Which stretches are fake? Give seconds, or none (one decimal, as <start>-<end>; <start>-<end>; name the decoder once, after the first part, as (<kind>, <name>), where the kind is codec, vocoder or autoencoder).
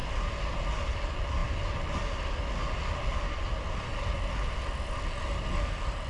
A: none